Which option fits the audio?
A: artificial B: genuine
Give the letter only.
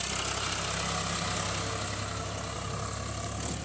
B